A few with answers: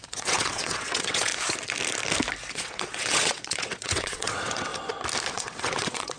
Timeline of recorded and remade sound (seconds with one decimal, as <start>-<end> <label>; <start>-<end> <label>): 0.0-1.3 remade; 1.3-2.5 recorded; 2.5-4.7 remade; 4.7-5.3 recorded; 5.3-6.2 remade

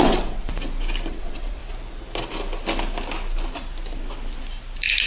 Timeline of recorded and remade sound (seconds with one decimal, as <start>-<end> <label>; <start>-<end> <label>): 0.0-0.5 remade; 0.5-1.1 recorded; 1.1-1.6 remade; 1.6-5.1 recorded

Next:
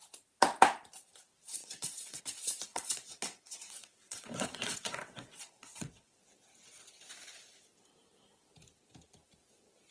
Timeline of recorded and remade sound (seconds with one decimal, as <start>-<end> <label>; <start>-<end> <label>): 0.0-1.6 recorded; 1.6-2.2 remade; 2.2-2.7 recorded; 2.7-6.2 remade; 6.2-9.9 recorded

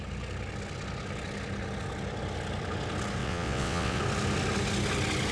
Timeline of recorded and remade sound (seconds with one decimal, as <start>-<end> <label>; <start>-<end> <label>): 0.0-3.2 recorded; 3.2-4.0 remade; 4.0-5.3 recorded